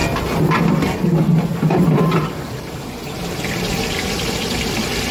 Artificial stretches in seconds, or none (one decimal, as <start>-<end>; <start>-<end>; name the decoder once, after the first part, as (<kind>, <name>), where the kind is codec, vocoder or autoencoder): 1.5-4.1 (vocoder, BigVGAN v2)